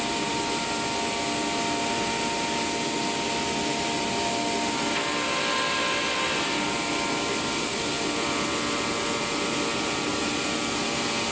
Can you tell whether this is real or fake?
real